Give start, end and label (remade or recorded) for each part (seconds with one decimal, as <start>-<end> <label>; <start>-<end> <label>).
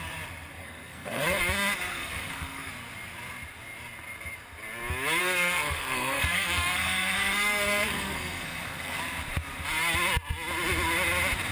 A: 0.0-0.6 recorded; 0.6-1.4 remade; 1.4-1.9 recorded; 1.9-2.7 remade; 2.7-5.2 recorded; 5.2-9.0 remade; 9.0-11.5 recorded